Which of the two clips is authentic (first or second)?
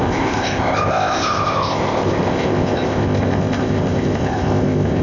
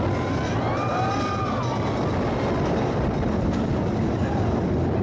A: second